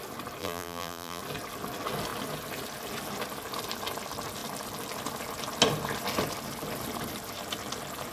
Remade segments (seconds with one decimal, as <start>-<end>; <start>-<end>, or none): 0.4-1.2